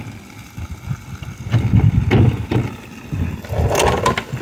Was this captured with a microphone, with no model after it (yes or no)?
yes